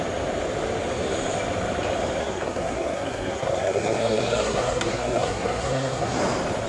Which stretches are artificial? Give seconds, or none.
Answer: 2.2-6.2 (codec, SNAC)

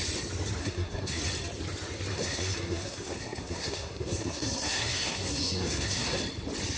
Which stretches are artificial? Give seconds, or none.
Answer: 0.6-1.2 (codec, SNAC); 2.1-6.2

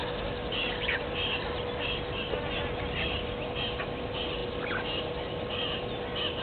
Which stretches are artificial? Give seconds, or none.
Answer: none